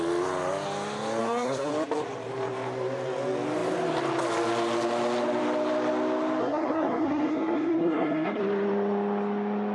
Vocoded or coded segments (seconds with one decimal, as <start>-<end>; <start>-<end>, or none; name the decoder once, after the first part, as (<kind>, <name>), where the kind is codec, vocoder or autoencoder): 1.2-1.7 (codec, SNAC); 6.4-8.4